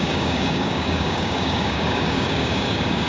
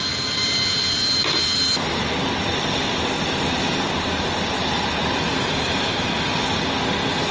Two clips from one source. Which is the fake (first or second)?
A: first